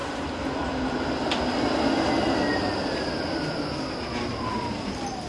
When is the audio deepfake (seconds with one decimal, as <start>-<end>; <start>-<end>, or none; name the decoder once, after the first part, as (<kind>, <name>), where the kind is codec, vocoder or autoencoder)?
0.0-2.4 (vocoder, BigVGAN v2)